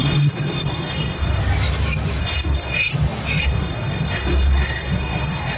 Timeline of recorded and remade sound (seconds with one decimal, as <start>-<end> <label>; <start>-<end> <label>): 0.0-1.4 remade; 1.4-2.2 recorded; 2.2-2.9 remade; 2.9-3.4 recorded; 3.4-5.6 remade